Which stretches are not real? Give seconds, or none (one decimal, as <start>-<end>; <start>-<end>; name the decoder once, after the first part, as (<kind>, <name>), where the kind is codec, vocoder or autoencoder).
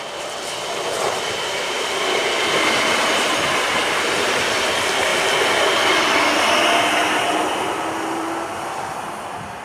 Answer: 0.0-3.8 (vocoder, BigVGAN v2); 4.6-5.1; 7.4-9.6